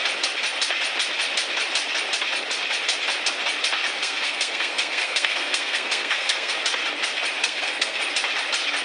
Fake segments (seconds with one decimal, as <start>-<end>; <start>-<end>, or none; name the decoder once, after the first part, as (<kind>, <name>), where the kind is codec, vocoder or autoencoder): 4.0-6.5 (codec, SNAC); 7.4-8.0